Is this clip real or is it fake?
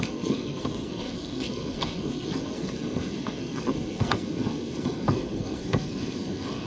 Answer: fake